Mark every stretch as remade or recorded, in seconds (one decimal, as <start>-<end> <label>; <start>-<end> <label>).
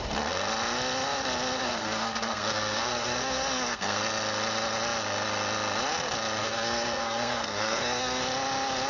0.0-1.6 recorded; 1.6-4.0 remade; 4.0-6.4 recorded; 6.4-8.2 remade; 8.2-8.9 recorded